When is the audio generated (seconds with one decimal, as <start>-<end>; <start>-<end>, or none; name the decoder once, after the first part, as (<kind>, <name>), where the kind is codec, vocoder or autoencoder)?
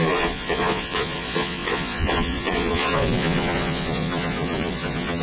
0.0-5.2 (vocoder, Vocos)